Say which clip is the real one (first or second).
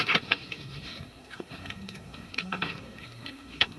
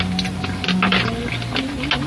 second